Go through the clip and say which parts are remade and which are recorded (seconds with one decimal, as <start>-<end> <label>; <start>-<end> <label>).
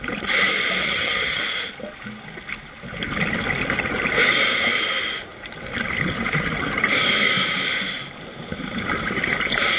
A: 0.0-0.8 recorded; 0.8-1.4 remade; 1.4-9.8 recorded